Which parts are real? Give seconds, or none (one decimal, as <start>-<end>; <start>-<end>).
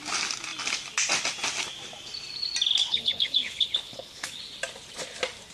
0.0-2.8; 4.4-5.5